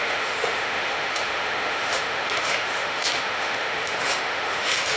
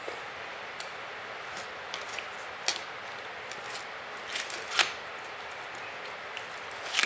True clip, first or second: second